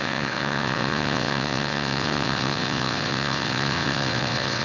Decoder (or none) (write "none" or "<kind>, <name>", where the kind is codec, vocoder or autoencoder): vocoder, WaveNeXt